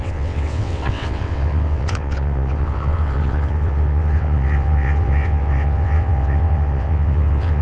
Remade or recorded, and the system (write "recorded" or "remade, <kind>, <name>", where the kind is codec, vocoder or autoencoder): remade, vocoder, WaveNeXt